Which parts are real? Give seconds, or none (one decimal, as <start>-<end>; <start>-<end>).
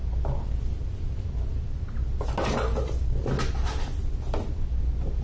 0.0-5.2